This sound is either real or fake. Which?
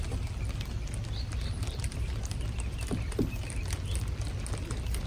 real